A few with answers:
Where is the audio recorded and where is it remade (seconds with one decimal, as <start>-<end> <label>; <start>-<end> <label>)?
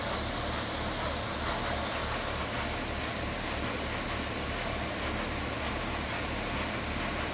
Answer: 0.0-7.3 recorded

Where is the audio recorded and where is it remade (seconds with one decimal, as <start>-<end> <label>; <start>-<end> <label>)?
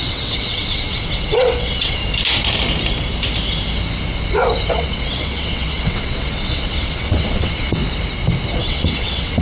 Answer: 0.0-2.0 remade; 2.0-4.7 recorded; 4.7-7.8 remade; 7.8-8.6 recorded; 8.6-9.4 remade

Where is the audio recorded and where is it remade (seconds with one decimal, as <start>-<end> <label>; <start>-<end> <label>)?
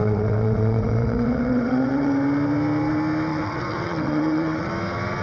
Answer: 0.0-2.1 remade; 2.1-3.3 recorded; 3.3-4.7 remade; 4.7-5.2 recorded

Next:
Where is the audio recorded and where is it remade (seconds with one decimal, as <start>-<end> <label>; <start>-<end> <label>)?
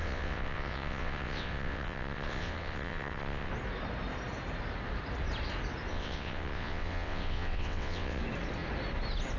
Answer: 0.0-3.5 remade; 3.5-5.9 recorded; 5.9-8.2 remade; 8.2-9.4 recorded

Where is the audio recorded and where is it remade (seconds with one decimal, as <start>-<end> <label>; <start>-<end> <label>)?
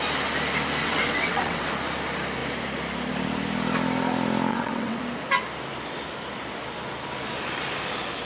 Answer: 0.0-0.8 recorded; 0.8-1.7 remade; 1.7-4.5 recorded; 4.5-5.0 remade; 5.0-8.2 recorded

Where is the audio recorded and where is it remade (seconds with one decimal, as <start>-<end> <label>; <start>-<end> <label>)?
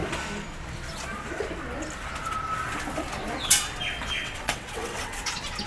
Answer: 0.0-4.2 recorded; 4.2-5.2 remade; 5.2-5.7 recorded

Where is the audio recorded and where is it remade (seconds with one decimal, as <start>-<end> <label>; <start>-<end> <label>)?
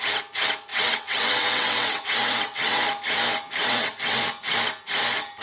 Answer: 0.0-0.7 recorded; 0.7-2.8 remade; 2.8-3.6 recorded; 3.6-4.2 remade; 4.2-5.4 recorded